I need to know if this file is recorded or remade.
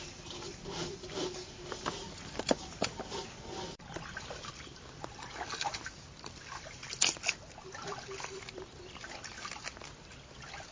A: remade